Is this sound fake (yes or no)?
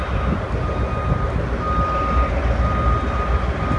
no